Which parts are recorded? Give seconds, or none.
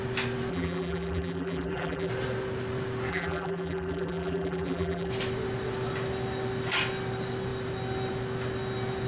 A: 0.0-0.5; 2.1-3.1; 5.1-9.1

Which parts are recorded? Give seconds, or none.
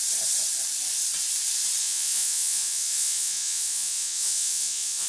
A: 0.0-1.8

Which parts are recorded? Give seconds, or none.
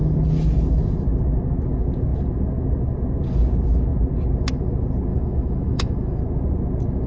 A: 0.0-5.1; 6.2-7.1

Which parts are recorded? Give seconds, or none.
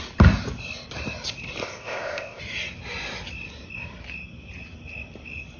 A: 0.0-1.6; 2.4-5.6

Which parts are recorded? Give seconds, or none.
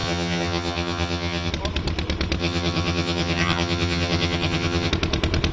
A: 1.5-2.4; 4.9-5.5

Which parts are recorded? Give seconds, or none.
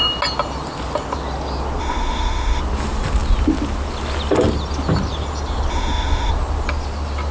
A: 0.0-1.8; 2.6-5.7; 6.3-7.3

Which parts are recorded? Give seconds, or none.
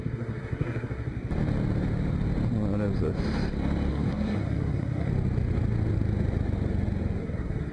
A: 1.1-3.9; 5.1-7.2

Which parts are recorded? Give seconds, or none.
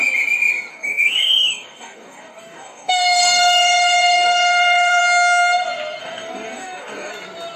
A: 0.0-0.7; 5.0-6.0; 7.1-7.6